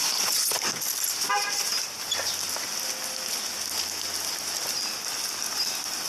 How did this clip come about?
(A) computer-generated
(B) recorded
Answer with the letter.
B